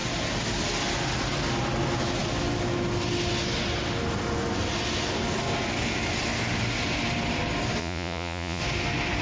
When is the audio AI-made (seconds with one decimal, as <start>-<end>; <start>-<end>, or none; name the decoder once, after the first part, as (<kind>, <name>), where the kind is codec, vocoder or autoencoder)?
7.8-8.6 (vocoder, Vocos)